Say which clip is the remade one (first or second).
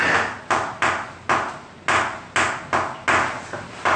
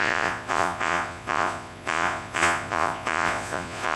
second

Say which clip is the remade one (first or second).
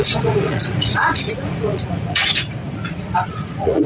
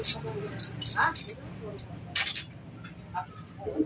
first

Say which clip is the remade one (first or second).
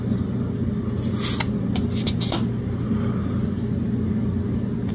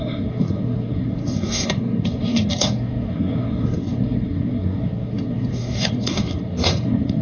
second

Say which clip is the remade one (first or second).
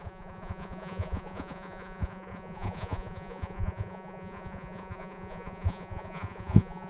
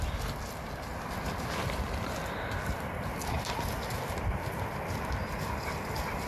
first